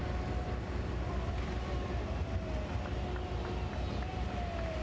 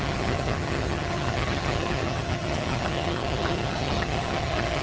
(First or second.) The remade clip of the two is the second